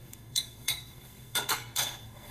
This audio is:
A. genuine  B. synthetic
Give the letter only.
B